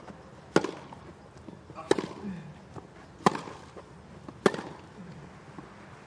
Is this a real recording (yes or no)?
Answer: yes